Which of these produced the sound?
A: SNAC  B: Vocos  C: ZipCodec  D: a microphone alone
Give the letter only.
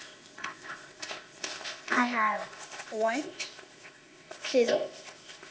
C